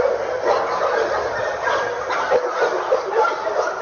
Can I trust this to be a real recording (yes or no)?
yes